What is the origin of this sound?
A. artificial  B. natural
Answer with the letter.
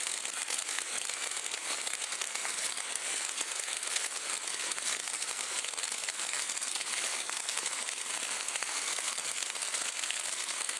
A